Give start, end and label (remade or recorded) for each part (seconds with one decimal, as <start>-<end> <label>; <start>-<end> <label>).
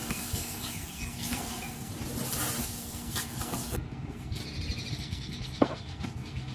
0.0-1.9 remade; 1.9-2.6 recorded; 2.6-4.4 remade; 4.4-4.9 recorded; 4.9-6.5 remade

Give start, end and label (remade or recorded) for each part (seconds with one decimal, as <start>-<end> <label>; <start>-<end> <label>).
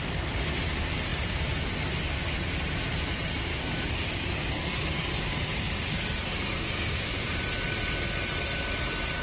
0.0-3.5 recorded; 3.5-7.4 remade; 7.4-9.2 recorded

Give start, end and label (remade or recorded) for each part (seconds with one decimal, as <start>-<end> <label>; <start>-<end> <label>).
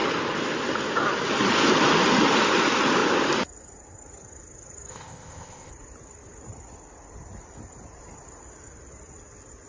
0.0-4.9 recorded; 4.9-5.7 remade; 5.7-9.7 recorded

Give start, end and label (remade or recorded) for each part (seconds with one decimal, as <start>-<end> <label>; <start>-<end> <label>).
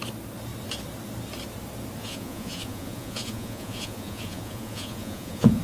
0.0-2.0 recorded; 2.0-5.6 remade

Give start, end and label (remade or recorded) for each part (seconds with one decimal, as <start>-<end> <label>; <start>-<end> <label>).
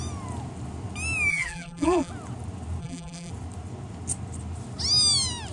0.0-1.3 recorded; 1.3-2.1 remade; 2.1-2.8 recorded; 2.8-3.3 remade; 3.3-5.5 recorded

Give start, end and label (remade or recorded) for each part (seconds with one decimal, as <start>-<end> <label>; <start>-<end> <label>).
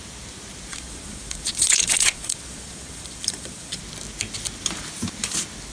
0.0-0.7 recorded; 0.7-3.8 remade; 3.8-5.7 recorded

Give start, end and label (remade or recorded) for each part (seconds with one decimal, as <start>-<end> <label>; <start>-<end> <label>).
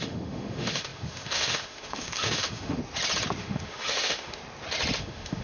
0.0-2.8 remade; 2.8-3.4 recorded; 3.4-4.4 remade; 4.4-5.0 recorded; 5.0-5.4 remade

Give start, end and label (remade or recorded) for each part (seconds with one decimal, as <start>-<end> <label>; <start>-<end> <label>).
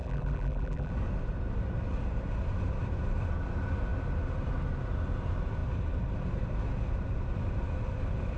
0.0-0.9 remade; 0.9-8.4 recorded